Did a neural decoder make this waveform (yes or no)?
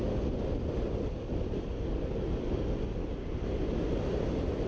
no